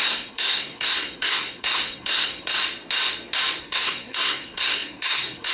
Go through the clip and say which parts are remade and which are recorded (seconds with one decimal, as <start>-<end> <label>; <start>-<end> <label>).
0.0-2.6 remade; 2.6-3.6 recorded; 3.6-5.5 remade